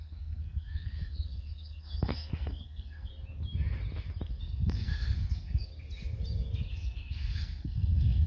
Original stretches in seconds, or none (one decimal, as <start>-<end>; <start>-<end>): 3.1-4.4; 5.7-6.7